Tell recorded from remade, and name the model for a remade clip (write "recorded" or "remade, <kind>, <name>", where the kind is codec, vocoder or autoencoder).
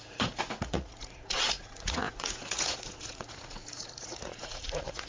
remade, vocoder, Vocos